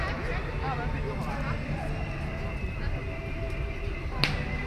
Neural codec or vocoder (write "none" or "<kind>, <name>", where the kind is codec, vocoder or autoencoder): none